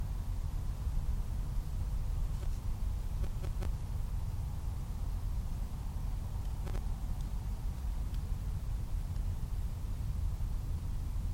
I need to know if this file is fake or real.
real